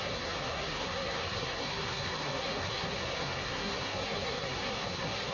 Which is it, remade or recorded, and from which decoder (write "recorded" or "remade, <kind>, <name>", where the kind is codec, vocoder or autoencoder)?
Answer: remade, codec, SNAC